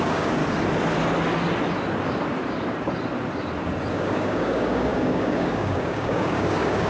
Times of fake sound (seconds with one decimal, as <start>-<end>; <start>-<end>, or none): 0.0-0.4; 3.9-6.9